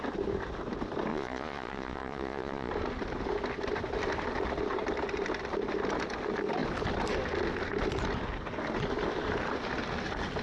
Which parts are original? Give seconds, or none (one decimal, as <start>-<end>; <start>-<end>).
0.0-1.1; 2.7-10.4